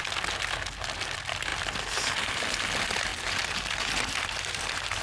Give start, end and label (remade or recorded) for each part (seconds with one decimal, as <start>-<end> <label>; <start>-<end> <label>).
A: 0.0-5.0 recorded